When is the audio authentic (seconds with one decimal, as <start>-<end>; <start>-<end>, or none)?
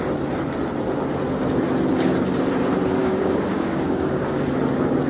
0.0-3.0; 4.4-5.1